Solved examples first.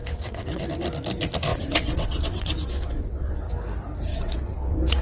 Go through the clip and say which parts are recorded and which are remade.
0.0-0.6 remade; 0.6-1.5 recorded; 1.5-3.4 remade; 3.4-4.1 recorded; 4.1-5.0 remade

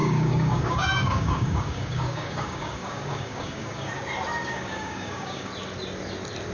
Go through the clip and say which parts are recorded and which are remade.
0.0-3.9 remade; 3.9-4.4 recorded; 4.4-5.5 remade; 5.5-6.5 recorded

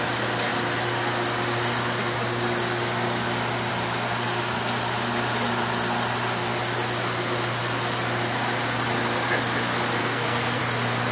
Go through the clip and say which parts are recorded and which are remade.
0.0-10.0 recorded; 10.0-10.6 remade; 10.6-11.1 recorded

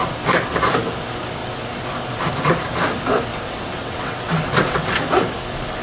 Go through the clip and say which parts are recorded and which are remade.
0.0-3.3 recorded; 3.3-4.9 remade; 4.9-5.8 recorded